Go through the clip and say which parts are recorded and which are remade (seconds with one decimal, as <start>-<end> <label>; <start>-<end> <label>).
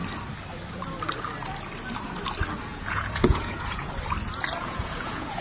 0.0-2.7 recorded; 2.7-3.9 remade; 3.9-4.6 recorded; 4.6-5.4 remade